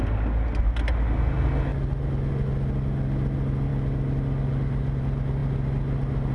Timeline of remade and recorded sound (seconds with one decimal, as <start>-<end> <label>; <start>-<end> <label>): 0.0-6.3 recorded